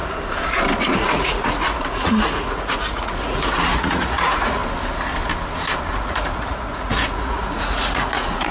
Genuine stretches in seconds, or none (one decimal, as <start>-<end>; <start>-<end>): 0.0-0.8; 4.6-5.9